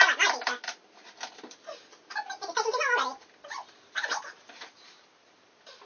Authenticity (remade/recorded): recorded